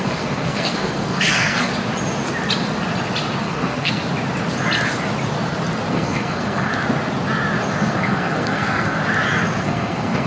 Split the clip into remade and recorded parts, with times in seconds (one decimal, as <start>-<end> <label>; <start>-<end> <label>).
0.0-1.7 remade; 1.7-3.4 recorded; 3.4-4.0 remade; 4.0-5.9 recorded; 5.9-6.7 remade; 6.7-7.7 recorded; 7.7-9.0 remade; 9.0-9.6 recorded; 9.6-10.3 remade